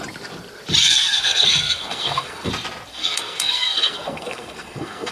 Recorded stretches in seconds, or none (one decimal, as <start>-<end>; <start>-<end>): 0.0-0.8; 2.5-2.9